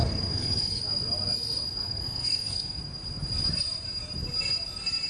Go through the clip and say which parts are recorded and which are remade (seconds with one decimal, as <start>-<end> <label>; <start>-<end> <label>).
0.0-0.8 remade; 0.8-1.8 recorded; 1.8-2.8 remade; 2.8-5.1 recorded